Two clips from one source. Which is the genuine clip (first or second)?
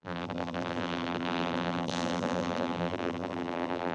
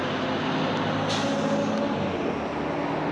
second